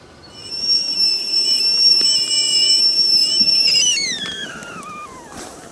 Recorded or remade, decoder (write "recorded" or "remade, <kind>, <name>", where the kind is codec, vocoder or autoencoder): remade, vocoder, BigVGAN v2